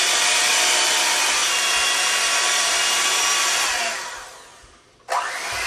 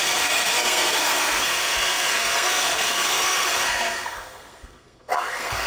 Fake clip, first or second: second